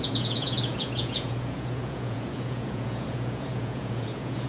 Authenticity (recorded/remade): remade